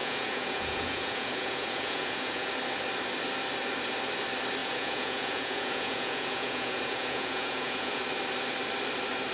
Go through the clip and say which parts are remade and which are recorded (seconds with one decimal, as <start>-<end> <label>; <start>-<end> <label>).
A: 0.0-2.5 remade; 2.5-4.6 recorded; 4.6-8.0 remade; 8.0-9.3 recorded